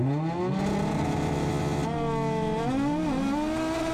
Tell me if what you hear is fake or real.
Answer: real